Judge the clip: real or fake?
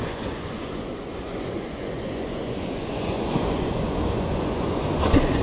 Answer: fake